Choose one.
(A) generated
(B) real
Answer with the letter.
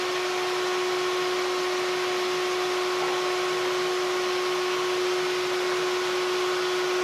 B